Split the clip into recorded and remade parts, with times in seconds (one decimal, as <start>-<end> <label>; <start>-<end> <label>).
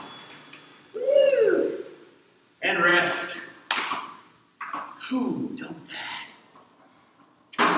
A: 0.0-0.7 recorded; 0.7-1.3 remade; 1.3-7.8 recorded